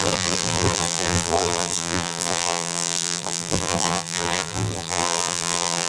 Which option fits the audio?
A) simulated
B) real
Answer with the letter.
A